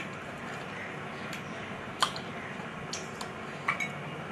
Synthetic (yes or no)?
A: no